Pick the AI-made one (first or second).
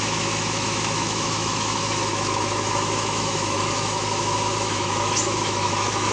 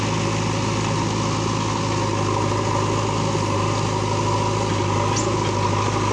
first